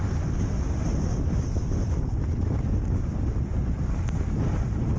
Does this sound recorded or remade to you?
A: recorded